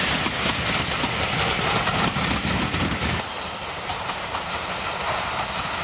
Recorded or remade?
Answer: recorded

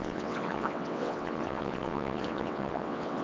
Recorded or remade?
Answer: remade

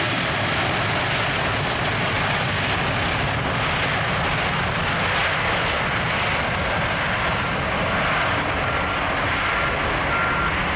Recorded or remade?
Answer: recorded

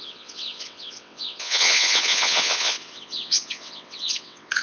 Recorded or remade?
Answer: remade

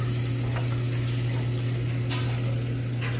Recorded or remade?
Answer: recorded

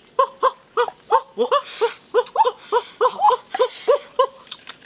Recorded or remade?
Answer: recorded